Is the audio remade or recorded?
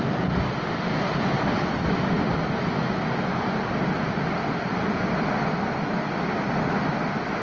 recorded